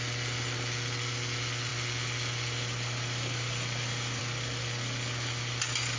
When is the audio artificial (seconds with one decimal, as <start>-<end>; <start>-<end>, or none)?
none